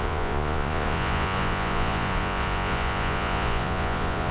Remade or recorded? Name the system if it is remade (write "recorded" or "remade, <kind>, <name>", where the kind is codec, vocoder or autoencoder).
remade, vocoder, Vocos